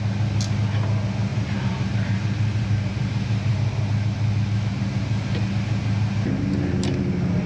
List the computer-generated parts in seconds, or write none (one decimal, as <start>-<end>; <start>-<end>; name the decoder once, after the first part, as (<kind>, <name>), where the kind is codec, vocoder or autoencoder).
1.3-3.5 (vocoder, BigVGAN v2)